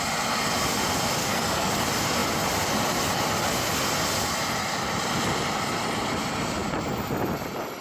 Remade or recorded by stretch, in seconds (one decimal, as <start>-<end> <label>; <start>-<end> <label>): 0.0-1.2 recorded; 1.2-1.7 remade; 1.7-7.8 recorded